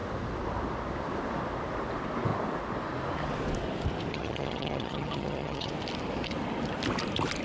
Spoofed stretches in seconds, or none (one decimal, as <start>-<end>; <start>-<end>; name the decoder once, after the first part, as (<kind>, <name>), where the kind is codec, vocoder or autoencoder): 4.1-5.7 (vocoder, HiFi-GAN)